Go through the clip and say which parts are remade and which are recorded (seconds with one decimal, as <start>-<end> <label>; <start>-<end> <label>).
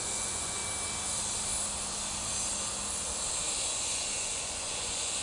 0.0-0.6 remade; 0.6-3.7 recorded; 3.7-5.2 remade